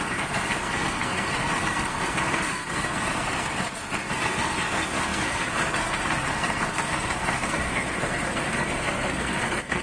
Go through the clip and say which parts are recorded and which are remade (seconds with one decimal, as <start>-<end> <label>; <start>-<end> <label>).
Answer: 0.0-9.8 remade